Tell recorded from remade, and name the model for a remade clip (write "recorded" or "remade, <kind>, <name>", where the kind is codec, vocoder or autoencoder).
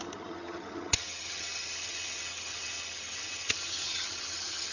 remade, vocoder, HiFi-GAN